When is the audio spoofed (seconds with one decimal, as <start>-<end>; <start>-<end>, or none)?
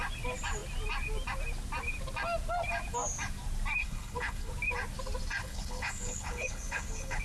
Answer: 3.8-4.5; 5.4-7.2